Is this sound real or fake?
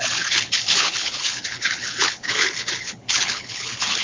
fake